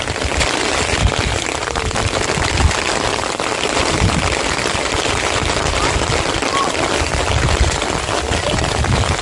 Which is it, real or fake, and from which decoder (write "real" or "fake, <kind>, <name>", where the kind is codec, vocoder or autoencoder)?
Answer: real